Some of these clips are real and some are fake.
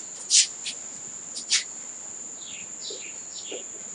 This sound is real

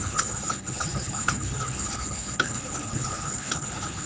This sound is fake